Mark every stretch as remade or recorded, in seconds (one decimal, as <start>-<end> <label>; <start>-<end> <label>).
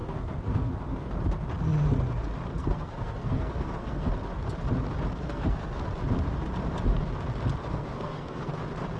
0.0-1.1 remade; 1.1-2.6 recorded; 2.6-4.1 remade; 4.1-5.2 recorded; 5.2-5.8 remade; 5.8-7.6 recorded; 7.6-8.5 remade; 8.5-9.0 recorded